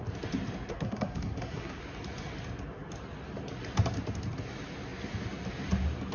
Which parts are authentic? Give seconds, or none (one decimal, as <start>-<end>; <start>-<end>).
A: 0.0-0.7; 1.8-6.1